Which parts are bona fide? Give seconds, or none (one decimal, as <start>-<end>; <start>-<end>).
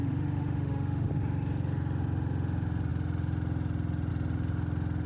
1.1-5.1